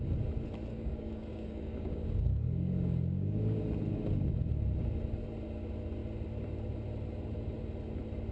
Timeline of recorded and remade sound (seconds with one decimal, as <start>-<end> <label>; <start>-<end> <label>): 0.0-0.7 recorded; 0.7-3.6 remade; 3.6-8.3 recorded